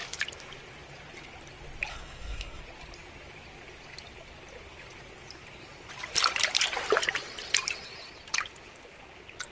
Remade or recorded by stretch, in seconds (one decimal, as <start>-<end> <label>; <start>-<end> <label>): 0.0-1.9 recorded; 1.9-2.6 remade; 2.6-9.5 recorded